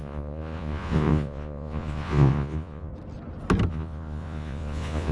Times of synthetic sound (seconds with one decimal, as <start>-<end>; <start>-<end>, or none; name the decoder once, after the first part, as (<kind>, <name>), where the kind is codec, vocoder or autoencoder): 0.0-2.9 (vocoder, Vocos); 3.7-5.1